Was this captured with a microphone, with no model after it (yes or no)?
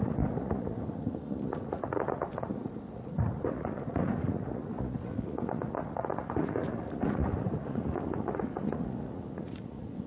no